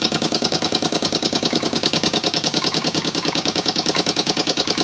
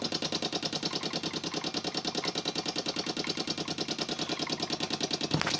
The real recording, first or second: second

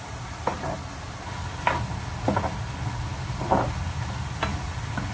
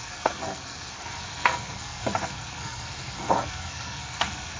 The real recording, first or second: first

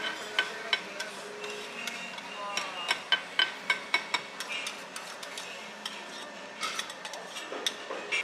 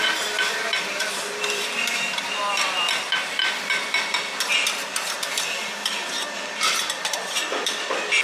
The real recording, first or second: first